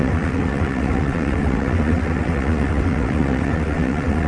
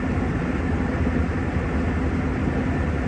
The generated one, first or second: first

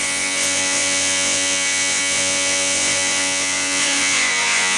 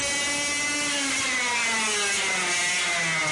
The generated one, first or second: first